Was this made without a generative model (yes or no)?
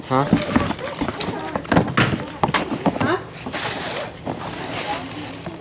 yes